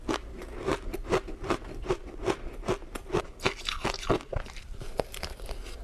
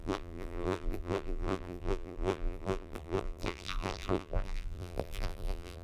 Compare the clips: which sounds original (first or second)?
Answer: first